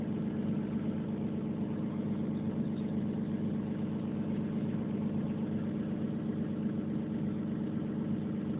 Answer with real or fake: real